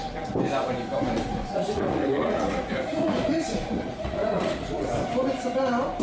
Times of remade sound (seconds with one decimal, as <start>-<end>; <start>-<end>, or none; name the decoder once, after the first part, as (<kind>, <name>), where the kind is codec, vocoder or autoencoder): 1.3-4.9 (vocoder, Vocos)